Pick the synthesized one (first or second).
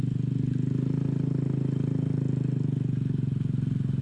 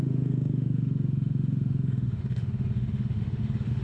second